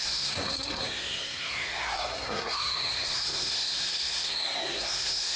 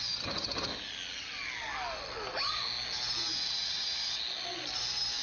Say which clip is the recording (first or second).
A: second